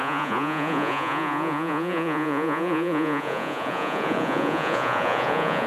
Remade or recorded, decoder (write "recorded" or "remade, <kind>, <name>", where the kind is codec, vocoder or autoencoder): remade, vocoder, Vocos